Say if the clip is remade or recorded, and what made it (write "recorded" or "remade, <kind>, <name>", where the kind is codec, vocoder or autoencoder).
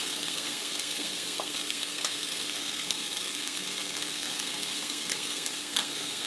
remade, codec, SNAC